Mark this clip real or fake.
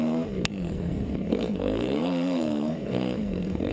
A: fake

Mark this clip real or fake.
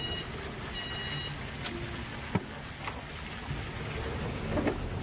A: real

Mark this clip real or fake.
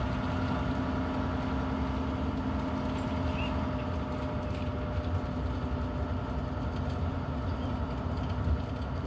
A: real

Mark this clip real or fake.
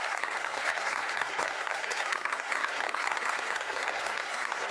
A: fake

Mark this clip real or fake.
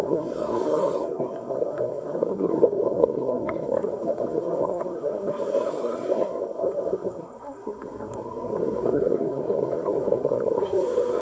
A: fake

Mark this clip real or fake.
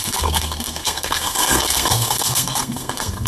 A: fake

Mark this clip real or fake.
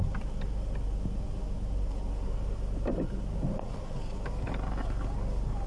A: real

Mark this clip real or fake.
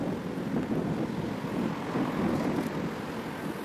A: real